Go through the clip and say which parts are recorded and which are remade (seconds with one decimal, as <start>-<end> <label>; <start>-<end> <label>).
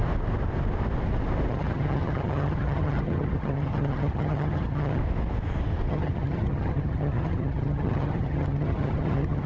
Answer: 0.0-1.5 recorded; 1.5-5.0 remade; 5.0-5.9 recorded; 5.9-9.5 remade